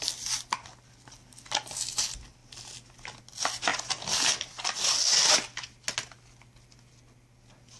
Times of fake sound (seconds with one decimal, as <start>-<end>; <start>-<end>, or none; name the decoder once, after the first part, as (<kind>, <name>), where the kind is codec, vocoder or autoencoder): none